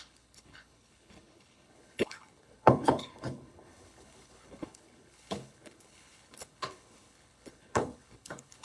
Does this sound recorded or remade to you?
remade